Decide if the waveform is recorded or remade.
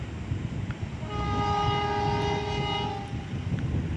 recorded